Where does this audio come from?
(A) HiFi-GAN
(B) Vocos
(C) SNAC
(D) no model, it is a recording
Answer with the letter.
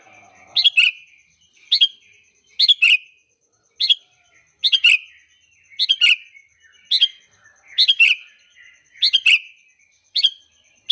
D